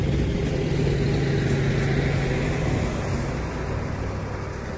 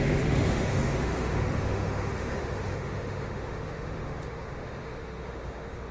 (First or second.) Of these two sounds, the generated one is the second